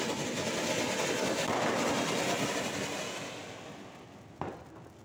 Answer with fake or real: real